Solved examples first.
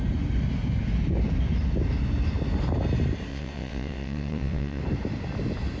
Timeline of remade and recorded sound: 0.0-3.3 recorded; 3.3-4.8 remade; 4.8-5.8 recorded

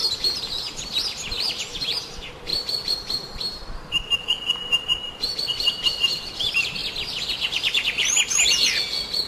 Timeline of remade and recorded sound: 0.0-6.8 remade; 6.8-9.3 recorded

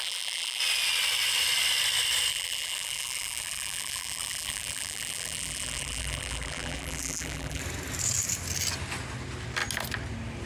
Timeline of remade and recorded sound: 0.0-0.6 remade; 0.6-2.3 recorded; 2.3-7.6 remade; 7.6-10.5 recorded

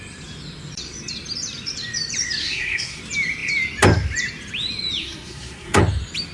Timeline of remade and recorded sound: 0.0-2.4 recorded; 2.4-3.0 remade; 3.0-5.0 recorded; 5.0-5.8 remade; 5.8-6.3 recorded

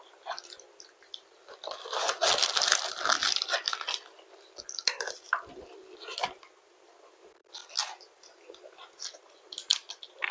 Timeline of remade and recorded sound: 0.0-3.2 recorded; 3.2-5.4 remade; 5.4-10.3 recorded